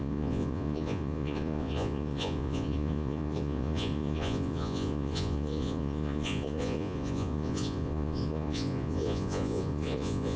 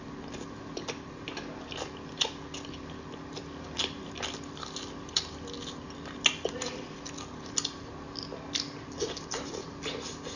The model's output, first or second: first